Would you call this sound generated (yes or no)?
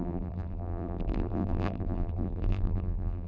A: yes